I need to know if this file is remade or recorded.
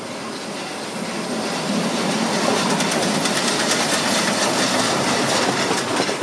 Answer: recorded